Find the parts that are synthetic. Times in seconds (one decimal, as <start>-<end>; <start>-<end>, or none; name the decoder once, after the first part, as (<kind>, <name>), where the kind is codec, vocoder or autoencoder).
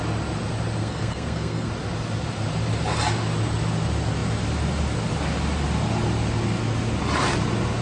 0.8-1.7 (codec, SNAC)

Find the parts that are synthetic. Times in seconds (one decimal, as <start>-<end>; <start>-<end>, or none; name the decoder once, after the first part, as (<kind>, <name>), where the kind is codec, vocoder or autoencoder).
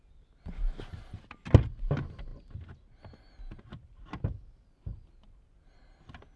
none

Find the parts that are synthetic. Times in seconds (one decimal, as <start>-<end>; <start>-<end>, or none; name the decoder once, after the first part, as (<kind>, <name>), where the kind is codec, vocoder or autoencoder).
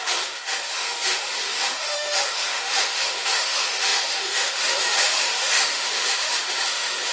0.0-7.1 (autoencoder, DAC-VAE)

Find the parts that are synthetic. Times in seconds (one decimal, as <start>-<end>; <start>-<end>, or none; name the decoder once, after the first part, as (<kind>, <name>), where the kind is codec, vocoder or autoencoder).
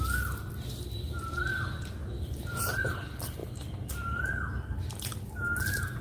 2.0-2.6 (vocoder, BigVGAN v2)